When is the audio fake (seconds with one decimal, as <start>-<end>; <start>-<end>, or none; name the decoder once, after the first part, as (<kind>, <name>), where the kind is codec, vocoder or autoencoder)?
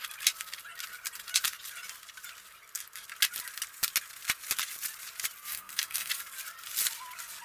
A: 5.5-6.1 (codec, SNAC)